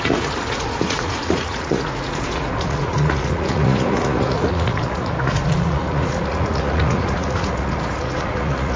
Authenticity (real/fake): fake